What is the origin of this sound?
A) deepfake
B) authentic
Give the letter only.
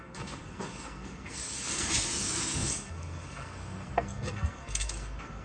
A